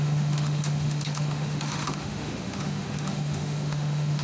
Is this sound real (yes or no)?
no